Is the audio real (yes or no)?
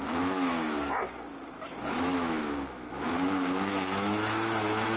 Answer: no